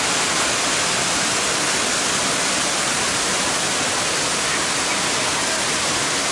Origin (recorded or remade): recorded